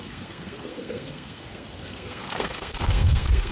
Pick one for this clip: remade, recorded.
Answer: remade